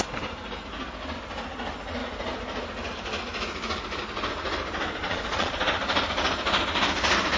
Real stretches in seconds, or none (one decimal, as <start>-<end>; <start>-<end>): 0.0-5.0; 5.6-7.4